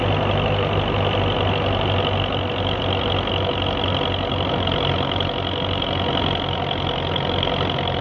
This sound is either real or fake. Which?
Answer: real